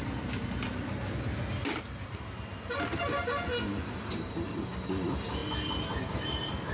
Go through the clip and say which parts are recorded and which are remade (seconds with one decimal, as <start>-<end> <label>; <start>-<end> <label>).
0.0-6.7 recorded